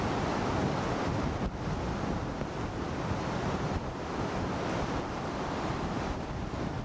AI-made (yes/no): no